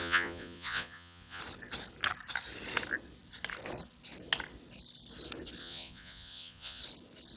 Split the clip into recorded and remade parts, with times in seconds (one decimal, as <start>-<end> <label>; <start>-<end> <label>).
0.0-1.4 remade; 1.4-5.6 recorded; 5.6-6.8 remade; 6.8-7.4 recorded